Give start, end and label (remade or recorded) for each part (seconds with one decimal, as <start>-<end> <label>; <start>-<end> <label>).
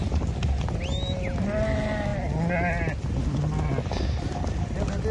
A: 0.0-5.1 recorded